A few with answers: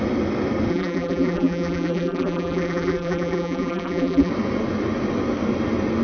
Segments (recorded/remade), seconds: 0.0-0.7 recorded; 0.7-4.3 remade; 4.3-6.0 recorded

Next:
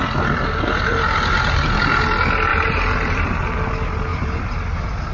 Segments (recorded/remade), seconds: 0.0-0.9 recorded; 0.9-1.7 remade; 1.7-2.5 recorded; 2.5-3.3 remade; 3.3-4.1 recorded; 4.1-5.1 remade

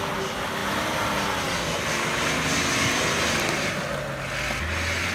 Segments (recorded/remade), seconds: 0.0-5.1 recorded